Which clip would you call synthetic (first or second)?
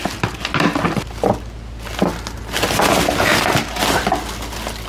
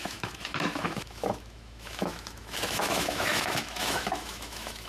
second